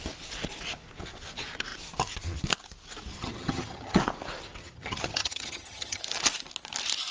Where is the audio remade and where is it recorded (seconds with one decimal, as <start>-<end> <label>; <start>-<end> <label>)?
0.0-3.1 recorded; 3.1-4.0 remade; 4.0-4.6 recorded; 4.6-6.0 remade; 6.0-7.1 recorded